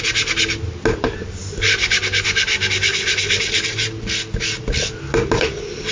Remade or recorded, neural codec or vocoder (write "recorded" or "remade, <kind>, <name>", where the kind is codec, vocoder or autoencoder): recorded